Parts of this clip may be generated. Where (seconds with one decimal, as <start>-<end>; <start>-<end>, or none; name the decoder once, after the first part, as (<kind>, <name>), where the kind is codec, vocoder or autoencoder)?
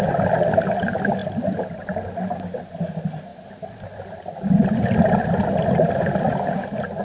none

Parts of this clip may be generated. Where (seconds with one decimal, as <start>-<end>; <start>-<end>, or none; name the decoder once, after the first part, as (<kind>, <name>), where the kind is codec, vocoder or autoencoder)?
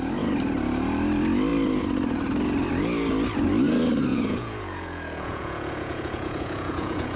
4.1-7.2 (vocoder, Vocos)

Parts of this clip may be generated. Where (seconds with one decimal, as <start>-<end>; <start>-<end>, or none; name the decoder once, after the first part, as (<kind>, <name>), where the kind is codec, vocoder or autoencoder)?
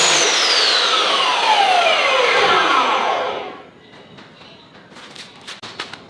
2.6-3.2 (vocoder, Vocos)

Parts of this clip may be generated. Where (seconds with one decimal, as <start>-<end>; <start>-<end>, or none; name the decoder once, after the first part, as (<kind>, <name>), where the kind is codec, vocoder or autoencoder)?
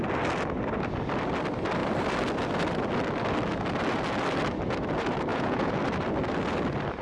5.3-5.8 (vocoder, Vocos)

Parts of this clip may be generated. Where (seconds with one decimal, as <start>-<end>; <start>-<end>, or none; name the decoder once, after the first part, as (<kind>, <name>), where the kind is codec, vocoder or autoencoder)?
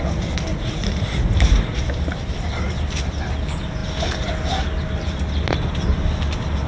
0.5-1.8 (vocoder, Vocos)